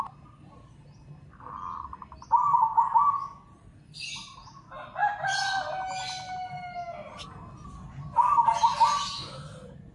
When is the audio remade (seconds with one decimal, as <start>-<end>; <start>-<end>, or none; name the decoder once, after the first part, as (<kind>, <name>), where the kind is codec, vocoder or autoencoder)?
none